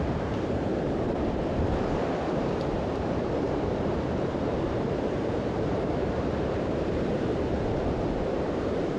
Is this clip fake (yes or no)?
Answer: yes